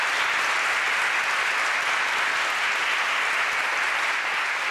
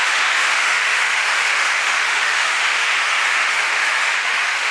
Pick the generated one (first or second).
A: second